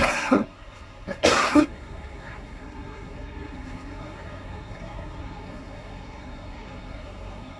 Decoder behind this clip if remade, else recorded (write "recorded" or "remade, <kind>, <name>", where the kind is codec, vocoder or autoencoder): remade, codec, SNAC